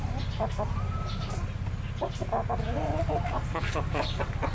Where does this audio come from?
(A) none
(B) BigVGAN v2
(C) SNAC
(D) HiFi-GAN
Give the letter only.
A